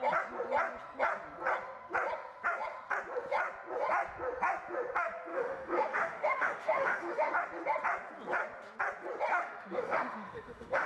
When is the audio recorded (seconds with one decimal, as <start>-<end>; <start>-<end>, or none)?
0.0-5.3; 7.3-9.3